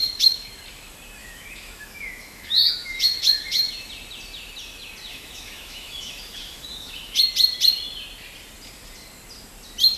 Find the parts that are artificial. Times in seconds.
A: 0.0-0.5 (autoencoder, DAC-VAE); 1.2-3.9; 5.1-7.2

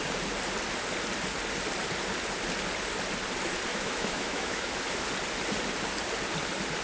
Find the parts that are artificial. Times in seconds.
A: 3.7-4.7 (autoencoder, DAC-VAE)

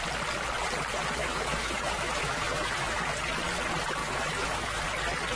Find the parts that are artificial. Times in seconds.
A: 1.2-3.1 (autoencoder, DAC-VAE); 4.0-4.8